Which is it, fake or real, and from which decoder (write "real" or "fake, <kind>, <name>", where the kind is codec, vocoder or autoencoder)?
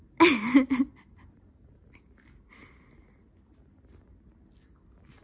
real